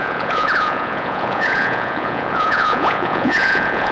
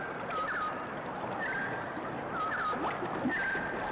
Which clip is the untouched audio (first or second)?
second